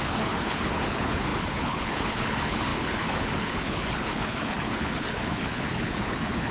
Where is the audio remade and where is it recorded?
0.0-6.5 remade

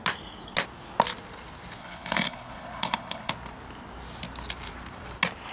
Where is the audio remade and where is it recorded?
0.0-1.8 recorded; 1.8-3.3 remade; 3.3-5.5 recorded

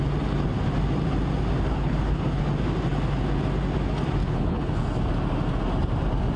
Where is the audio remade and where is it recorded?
0.0-1.7 recorded; 1.7-2.4 remade; 2.4-4.2 recorded; 4.2-4.7 remade; 4.7-6.4 recorded

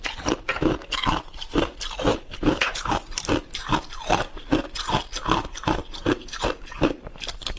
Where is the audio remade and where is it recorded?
0.0-2.1 recorded; 2.1-2.9 remade; 2.9-7.6 recorded